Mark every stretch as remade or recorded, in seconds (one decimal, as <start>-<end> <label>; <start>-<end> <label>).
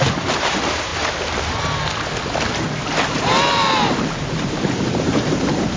0.0-0.9 remade; 0.9-3.5 recorded; 3.5-5.8 remade